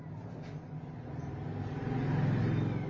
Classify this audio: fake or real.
real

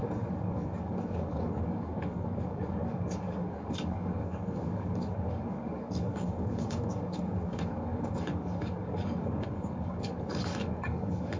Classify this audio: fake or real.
fake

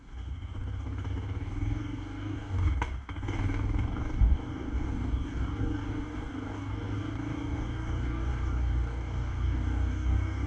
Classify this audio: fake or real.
fake